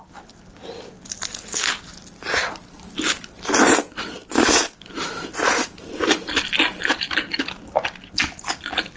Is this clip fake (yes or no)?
no